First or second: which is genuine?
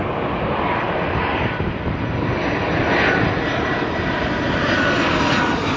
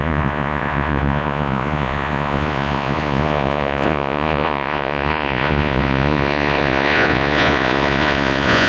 first